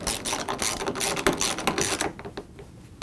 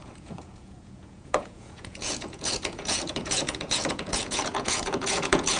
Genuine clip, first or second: first